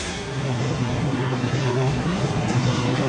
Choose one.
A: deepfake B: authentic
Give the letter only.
A